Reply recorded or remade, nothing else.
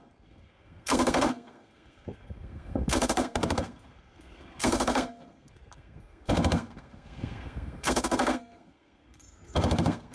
remade